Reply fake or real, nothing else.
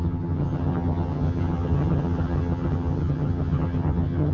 fake